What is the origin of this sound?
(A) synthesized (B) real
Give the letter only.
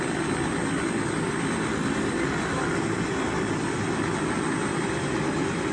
B